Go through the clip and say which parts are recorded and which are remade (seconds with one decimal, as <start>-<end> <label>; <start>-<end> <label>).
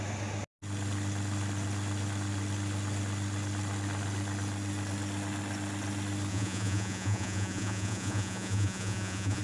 0.0-6.3 recorded; 6.3-9.4 remade